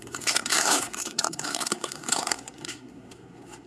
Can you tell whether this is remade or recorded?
remade